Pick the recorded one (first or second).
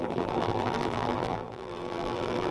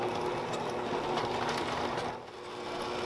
second